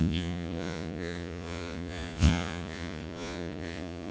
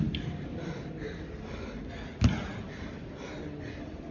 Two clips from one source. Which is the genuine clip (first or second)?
second